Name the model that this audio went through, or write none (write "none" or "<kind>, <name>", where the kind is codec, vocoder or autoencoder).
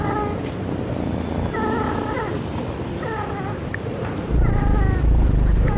none